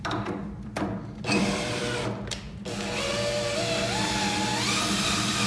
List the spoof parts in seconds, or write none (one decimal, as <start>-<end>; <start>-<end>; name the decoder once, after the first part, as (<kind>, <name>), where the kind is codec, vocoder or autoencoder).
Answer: 0.0-1.8 (vocoder, BigVGAN v2); 5.1-5.5